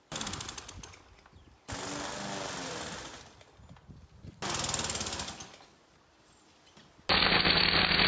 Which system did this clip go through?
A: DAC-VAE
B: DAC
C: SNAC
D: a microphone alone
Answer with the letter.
D